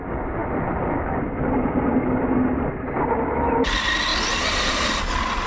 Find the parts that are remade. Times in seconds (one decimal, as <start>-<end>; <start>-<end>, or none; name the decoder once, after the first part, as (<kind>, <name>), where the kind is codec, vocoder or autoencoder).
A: none